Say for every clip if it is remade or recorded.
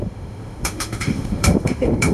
remade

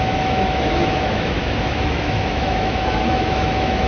remade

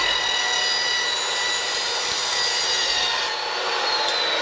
recorded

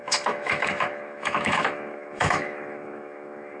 remade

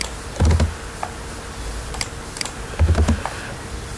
recorded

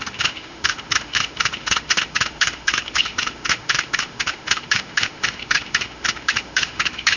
remade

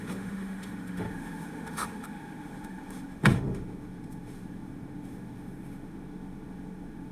remade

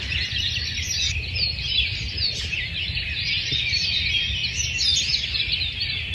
recorded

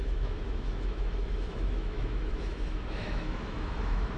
remade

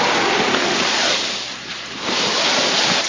recorded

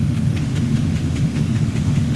remade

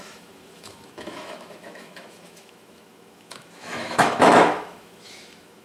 remade